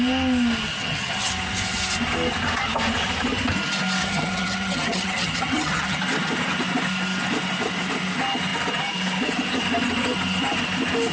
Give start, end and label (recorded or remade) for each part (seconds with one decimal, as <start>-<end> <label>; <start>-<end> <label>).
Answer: 0.0-0.7 recorded; 0.7-1.3 remade; 1.3-4.0 recorded; 4.0-6.0 remade; 6.0-11.1 recorded